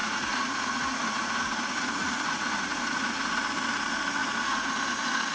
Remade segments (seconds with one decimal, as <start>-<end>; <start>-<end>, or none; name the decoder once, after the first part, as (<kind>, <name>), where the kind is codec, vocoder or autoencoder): 0.0-3.2 (vocoder, Vocos); 4.2-4.7